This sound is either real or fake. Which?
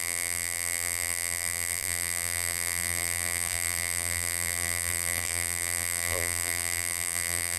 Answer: fake